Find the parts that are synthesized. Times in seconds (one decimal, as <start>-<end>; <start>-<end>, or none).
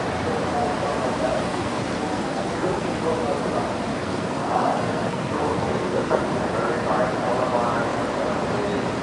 1.3-3.0; 3.9-6.2